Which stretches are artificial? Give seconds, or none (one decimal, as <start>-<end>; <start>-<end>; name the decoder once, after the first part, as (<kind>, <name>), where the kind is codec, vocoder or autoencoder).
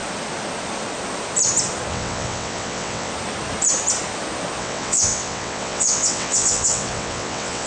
1.9-3.1 (vocoder, WaveNeXt); 4.6-7.7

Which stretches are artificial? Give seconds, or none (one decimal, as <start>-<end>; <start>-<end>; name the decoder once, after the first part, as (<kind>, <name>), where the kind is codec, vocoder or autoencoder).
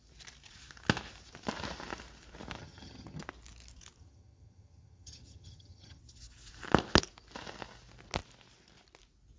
2.6-3.2 (vocoder, HiFi-GAN); 4.0-6.0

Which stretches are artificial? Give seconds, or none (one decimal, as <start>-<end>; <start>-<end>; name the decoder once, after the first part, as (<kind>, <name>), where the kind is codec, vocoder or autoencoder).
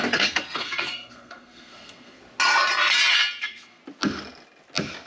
0.0-2.2 (codec, SNAC); 3.4-3.8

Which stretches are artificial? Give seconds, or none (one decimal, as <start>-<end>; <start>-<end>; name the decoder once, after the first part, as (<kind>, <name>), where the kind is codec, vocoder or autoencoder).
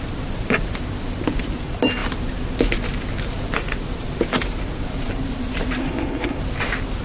5.8-6.4 (codec, SNAC)